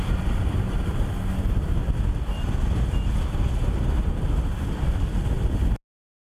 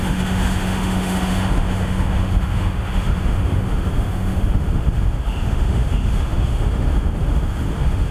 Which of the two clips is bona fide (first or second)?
first